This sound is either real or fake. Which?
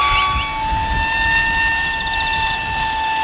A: real